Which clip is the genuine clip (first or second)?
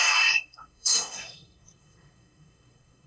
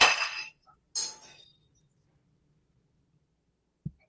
second